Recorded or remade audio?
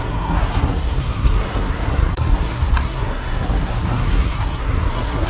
remade